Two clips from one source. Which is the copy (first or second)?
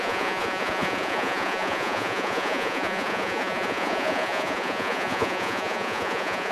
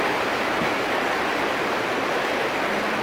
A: first